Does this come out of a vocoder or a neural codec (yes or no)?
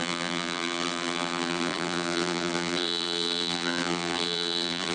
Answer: yes